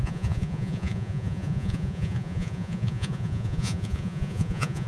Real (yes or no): no